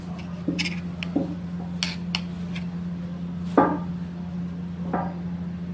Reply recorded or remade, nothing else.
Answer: recorded